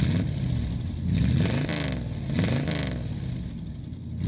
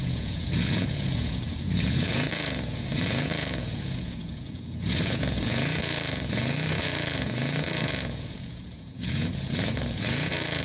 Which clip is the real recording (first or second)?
first